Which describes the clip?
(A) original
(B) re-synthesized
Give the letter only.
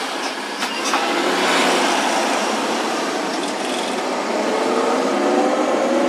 A